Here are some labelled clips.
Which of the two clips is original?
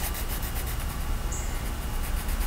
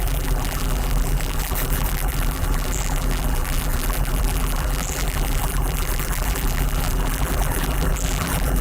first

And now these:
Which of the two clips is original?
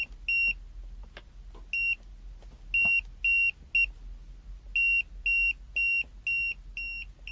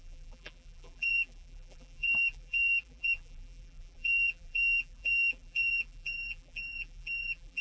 first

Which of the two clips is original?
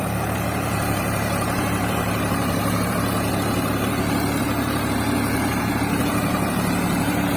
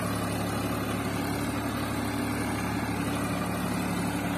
second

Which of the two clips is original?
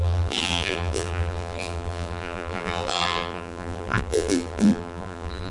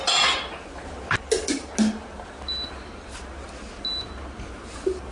second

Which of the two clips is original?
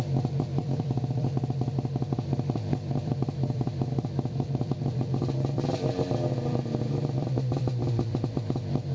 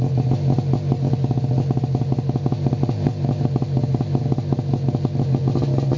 second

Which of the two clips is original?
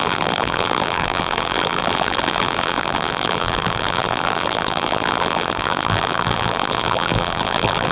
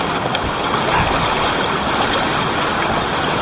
second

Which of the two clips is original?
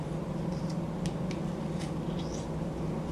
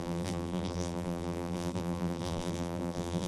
first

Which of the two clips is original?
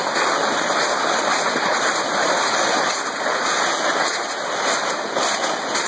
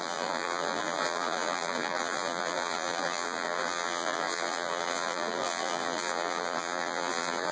first